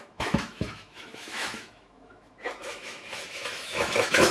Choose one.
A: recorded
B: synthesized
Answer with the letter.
B